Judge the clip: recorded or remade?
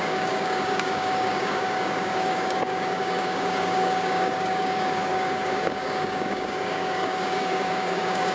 remade